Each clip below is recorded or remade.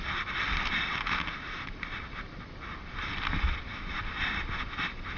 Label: recorded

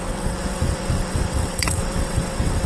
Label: remade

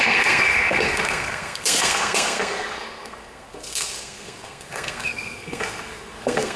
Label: remade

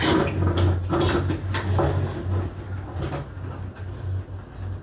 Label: recorded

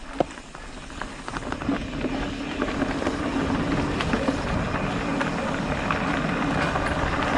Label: recorded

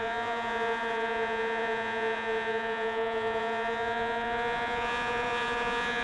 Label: remade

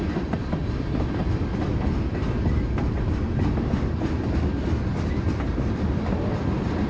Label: recorded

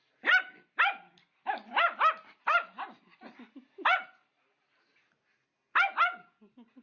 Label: recorded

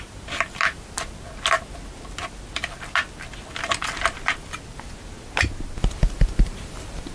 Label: recorded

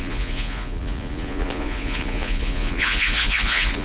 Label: remade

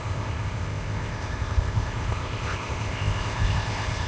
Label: remade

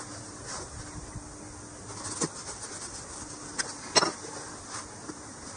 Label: recorded